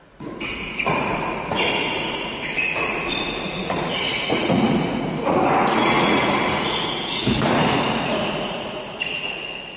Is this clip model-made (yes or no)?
yes